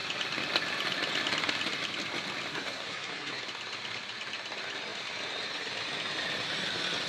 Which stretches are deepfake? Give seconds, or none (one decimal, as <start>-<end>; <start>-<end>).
2.5-3.4